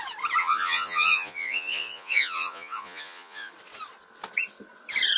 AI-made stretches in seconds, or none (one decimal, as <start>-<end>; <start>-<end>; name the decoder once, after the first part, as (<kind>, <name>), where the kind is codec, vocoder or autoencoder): 0.4-3.5 (vocoder, Vocos)